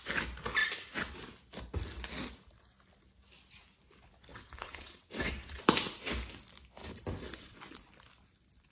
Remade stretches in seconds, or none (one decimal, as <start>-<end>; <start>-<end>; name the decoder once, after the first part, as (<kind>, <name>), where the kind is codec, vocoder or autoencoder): 4.3-5.6 (vocoder, WaveNeXt)

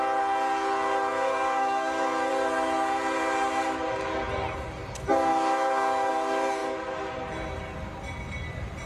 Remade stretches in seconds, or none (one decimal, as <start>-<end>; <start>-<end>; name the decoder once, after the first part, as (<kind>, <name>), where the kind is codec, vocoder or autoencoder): 1.1-2.3 (autoencoder, DAC-VAE); 5.3-6.1

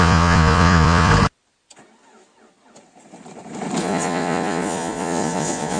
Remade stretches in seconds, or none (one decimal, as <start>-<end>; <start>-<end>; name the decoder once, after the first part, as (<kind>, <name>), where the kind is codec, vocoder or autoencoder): 0.0-1.1 (vocoder, Vocos); 3.8-5.8

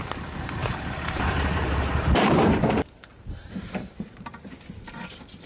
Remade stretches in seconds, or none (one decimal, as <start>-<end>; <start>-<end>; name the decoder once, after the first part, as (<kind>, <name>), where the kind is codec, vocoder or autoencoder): 0.6-2.6 (vocoder, BigVGAN v2); 3.1-5.0